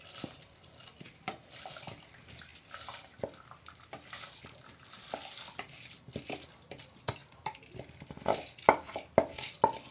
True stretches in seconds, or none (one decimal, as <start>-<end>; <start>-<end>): 2.5-6.7